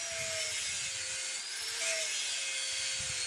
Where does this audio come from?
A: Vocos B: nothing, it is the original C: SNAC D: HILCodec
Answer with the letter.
B